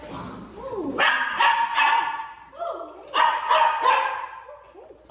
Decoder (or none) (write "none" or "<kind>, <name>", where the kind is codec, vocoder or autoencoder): none